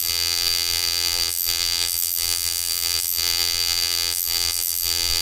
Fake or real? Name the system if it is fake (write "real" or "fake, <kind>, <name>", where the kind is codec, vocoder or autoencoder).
fake, vocoder, BigVGAN v2